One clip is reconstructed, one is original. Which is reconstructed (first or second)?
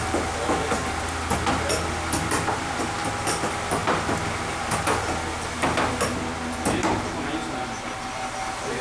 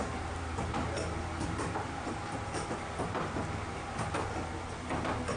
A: second